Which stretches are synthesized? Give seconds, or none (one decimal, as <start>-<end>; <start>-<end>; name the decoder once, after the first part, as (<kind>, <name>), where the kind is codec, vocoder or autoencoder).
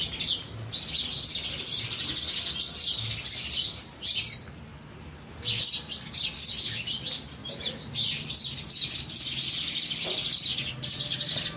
7.4-8.4 (vocoder, BigVGAN v2)